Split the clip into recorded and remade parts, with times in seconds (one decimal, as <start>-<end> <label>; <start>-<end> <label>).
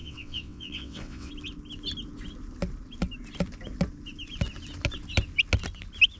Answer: 0.0-1.3 remade; 1.3-6.2 recorded